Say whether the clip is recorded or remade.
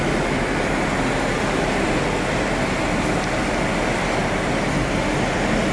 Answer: recorded